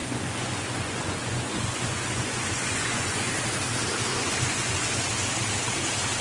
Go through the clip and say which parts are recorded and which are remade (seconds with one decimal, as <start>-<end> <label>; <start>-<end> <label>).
0.0-3.3 remade; 3.3-4.1 recorded; 4.1-5.1 remade; 5.1-6.2 recorded